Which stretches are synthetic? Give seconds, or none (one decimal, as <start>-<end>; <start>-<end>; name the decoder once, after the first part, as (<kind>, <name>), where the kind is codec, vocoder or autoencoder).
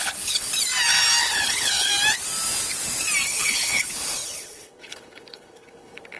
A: 0.0-0.5 (codec, HILCodec); 1.2-1.9; 3.3-6.2